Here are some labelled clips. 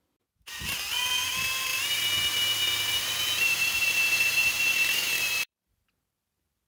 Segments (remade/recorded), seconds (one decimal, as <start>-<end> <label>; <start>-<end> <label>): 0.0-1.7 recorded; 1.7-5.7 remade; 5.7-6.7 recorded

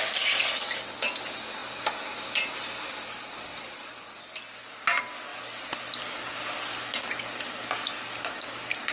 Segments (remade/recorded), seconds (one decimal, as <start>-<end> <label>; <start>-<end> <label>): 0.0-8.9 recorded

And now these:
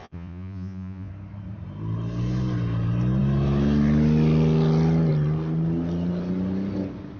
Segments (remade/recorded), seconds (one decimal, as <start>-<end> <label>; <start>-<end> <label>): 0.0-1.1 remade; 1.1-7.2 recorded

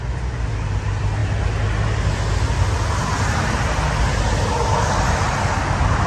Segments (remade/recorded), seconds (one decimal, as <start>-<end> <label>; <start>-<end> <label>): 0.0-6.1 recorded

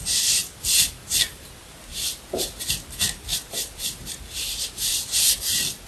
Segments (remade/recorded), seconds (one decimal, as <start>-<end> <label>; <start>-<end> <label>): 0.0-1.9 recorded; 1.9-2.6 remade; 2.6-3.3 recorded; 3.3-5.1 remade; 5.1-5.9 recorded